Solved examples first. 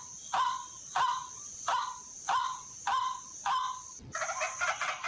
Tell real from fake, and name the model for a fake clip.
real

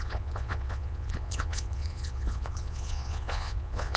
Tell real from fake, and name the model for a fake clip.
fake, vocoder, Vocos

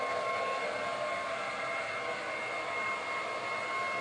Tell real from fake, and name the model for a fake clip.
real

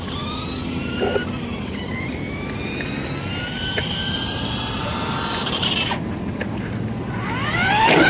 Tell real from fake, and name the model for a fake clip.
real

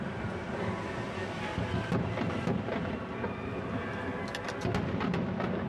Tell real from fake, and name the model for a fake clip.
real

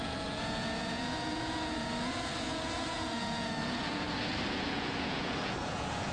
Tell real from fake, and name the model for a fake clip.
fake, vocoder, Vocos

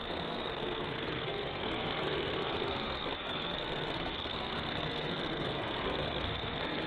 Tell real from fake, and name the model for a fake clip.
fake, codec, SNAC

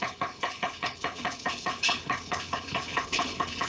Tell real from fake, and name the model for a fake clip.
fake, codec, HILCodec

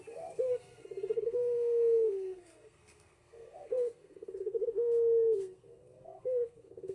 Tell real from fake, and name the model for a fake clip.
fake, codec, SNAC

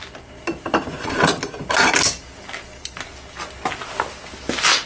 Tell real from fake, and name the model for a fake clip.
real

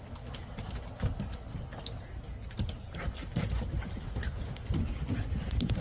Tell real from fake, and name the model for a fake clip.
real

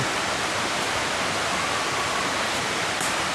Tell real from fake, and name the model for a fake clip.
real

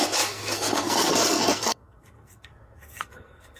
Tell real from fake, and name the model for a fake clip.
fake, codec, SNAC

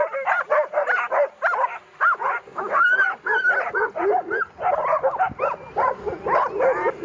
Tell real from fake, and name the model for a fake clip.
real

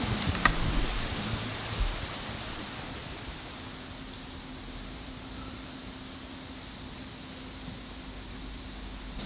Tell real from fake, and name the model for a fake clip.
real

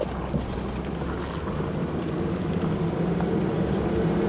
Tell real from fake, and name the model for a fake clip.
real